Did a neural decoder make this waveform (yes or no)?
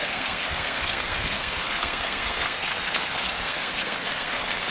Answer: yes